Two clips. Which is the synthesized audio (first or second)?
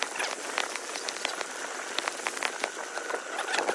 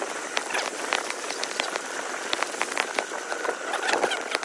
second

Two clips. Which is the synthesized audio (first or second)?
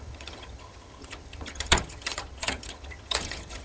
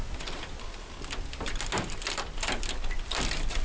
first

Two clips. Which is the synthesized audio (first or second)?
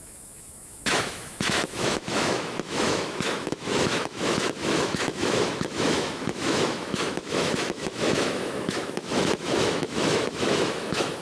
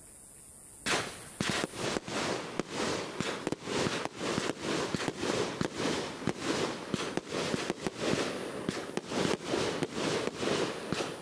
first